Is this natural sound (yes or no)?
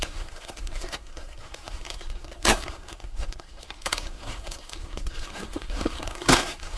no